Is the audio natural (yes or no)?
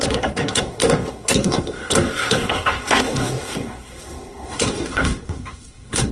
no